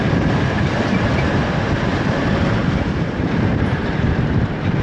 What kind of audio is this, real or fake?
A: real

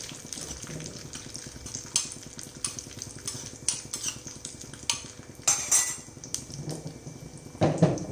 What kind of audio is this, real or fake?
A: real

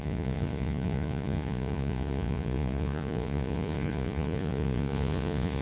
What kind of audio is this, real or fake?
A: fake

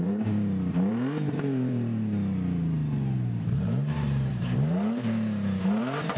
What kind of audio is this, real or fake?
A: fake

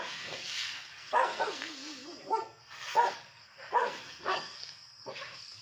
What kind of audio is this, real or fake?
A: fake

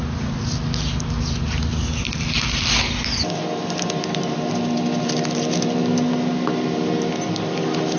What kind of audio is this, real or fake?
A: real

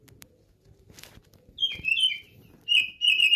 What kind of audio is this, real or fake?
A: real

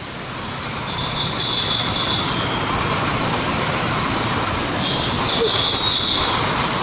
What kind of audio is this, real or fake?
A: real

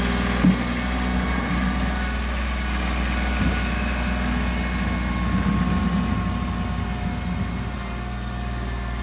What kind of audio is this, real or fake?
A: real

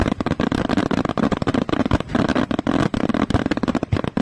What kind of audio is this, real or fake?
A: real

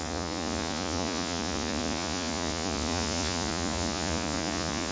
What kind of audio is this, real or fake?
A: fake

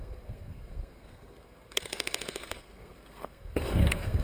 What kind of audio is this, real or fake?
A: fake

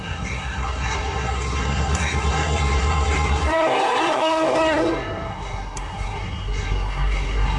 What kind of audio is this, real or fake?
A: fake